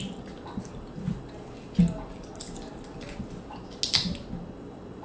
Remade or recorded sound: recorded